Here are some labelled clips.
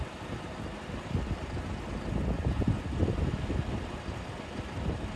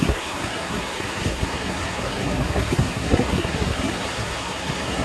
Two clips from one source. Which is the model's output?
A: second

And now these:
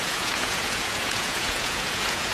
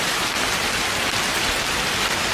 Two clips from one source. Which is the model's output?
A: first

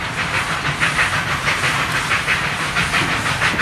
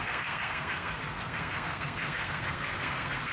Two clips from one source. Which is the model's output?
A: second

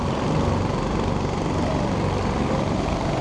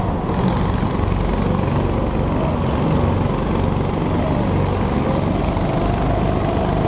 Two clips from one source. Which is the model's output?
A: first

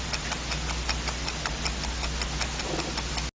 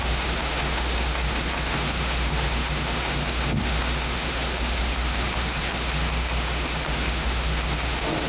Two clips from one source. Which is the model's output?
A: second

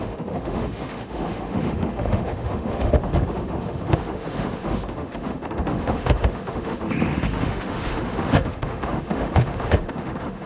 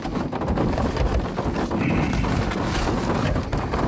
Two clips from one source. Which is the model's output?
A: first